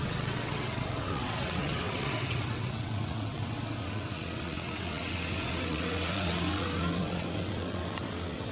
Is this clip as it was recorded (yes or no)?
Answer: no